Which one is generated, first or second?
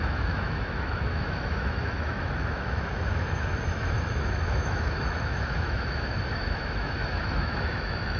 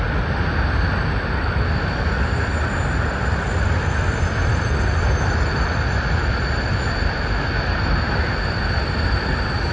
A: first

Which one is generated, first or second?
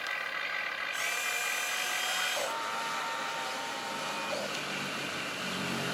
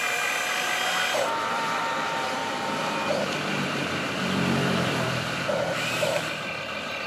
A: second